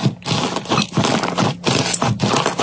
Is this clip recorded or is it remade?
recorded